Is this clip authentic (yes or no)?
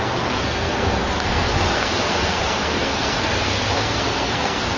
no